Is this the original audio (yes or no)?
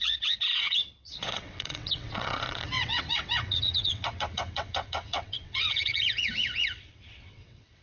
no